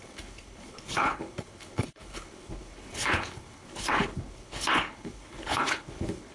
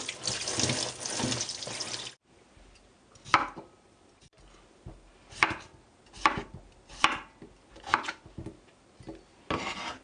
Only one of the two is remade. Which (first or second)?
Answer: first